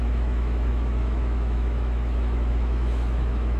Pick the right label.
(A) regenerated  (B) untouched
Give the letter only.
A